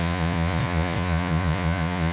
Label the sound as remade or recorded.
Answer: remade